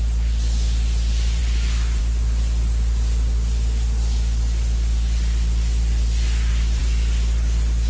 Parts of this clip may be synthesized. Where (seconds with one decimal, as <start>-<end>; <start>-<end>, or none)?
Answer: none